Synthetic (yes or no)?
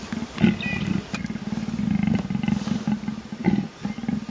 no